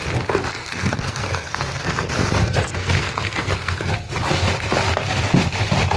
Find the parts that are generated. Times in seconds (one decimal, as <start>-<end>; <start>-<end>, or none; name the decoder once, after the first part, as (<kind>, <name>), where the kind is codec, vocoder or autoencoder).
0.6-2.1 (codec, SNAC); 2.8-3.9